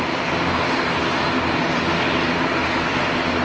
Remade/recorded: recorded